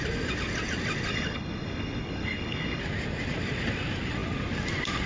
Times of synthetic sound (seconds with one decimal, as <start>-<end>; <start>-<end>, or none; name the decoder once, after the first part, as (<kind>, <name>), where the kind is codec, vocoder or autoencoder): 1.1-2.8 (codec, HILCodec)